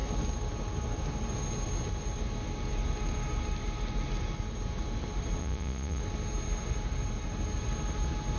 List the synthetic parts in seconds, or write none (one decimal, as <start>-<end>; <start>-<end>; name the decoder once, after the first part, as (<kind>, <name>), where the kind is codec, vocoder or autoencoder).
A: 5.4-6.0 (vocoder, Vocos)